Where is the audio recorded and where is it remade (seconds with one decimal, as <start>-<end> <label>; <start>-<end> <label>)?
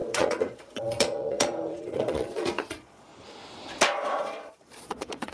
0.0-3.1 remade; 3.1-4.2 recorded; 4.2-5.3 remade